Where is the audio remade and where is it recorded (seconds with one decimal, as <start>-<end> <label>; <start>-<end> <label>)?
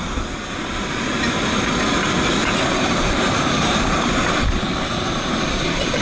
0.0-2.4 recorded; 2.4-6.0 remade